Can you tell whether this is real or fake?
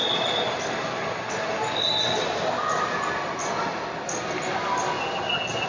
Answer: real